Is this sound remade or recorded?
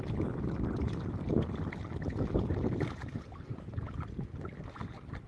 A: recorded